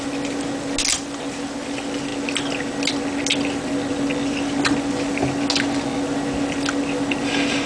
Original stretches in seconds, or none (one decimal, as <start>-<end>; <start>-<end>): 0.0-7.7